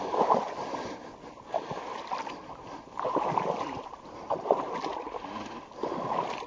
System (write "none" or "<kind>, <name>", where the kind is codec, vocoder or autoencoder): none